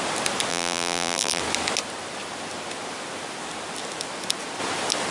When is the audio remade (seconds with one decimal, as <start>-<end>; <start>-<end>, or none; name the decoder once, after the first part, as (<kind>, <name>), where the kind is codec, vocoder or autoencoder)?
0.5-1.4 (vocoder, BigVGAN v2)